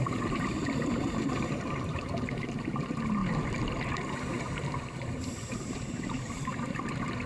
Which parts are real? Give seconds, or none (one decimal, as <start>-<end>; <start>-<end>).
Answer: 3.2-4.4